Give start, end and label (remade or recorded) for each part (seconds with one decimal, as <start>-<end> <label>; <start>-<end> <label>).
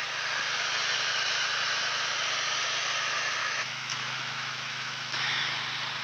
0.0-3.4 recorded; 3.4-5.4 remade; 5.4-6.0 recorded